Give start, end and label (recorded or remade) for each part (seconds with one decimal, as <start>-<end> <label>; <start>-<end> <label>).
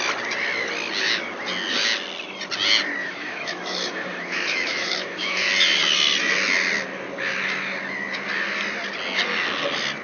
0.0-3.0 recorded; 3.0-5.5 remade; 5.5-10.0 recorded